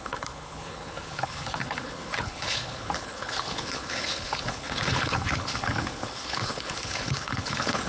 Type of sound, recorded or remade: remade